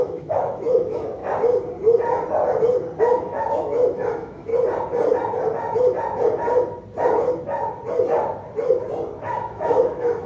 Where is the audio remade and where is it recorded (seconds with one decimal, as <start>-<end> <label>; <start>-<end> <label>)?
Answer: 0.0-1.2 remade; 1.2-3.0 recorded; 3.0-4.5 remade; 4.5-9.2 recorded; 9.2-10.3 remade